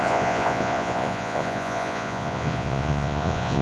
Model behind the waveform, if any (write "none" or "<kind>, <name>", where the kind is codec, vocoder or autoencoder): vocoder, Vocos